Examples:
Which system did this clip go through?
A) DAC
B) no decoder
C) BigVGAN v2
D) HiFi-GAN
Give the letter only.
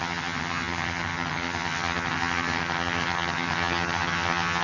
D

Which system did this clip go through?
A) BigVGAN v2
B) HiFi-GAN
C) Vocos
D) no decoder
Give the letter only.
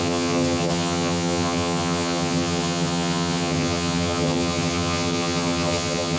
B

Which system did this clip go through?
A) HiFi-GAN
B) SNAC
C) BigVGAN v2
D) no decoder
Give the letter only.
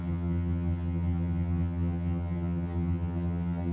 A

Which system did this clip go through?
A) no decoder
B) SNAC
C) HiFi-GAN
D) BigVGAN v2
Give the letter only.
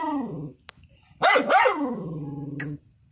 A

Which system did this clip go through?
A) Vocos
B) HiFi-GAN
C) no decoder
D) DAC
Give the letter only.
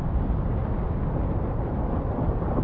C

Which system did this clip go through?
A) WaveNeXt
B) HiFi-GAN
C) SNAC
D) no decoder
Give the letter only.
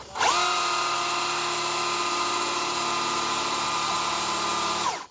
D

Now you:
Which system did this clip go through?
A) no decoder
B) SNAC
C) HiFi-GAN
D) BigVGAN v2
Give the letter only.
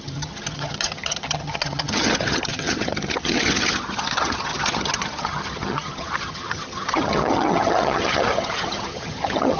C